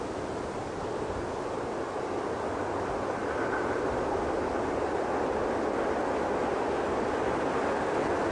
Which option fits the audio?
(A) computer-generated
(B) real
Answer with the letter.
B